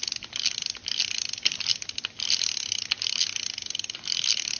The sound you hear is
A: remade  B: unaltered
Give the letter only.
B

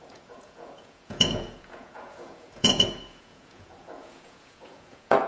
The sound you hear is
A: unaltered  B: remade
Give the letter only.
B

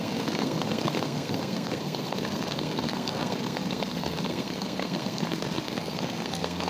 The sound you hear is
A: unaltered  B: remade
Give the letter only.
B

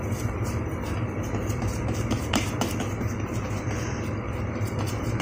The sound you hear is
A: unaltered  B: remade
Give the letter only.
B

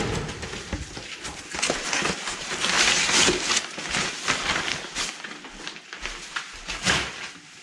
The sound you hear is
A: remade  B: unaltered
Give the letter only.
B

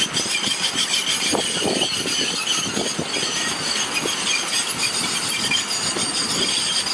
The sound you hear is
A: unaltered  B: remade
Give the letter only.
A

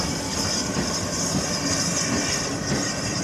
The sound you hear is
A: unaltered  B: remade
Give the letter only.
A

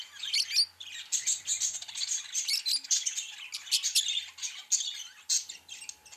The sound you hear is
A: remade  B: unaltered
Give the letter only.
B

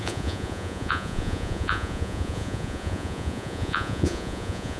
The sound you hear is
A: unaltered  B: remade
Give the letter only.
B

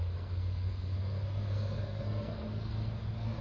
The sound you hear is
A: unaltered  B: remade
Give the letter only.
B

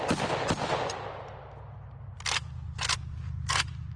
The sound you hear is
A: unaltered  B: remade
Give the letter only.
A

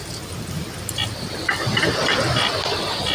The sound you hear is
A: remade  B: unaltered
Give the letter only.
B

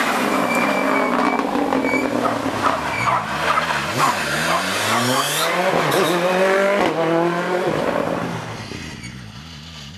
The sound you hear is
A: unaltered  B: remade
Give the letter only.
A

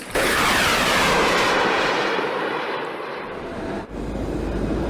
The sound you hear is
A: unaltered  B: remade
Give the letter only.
B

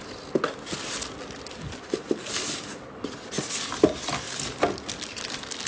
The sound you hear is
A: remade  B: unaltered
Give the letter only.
B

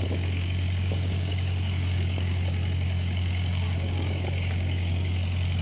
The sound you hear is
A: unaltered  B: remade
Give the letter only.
B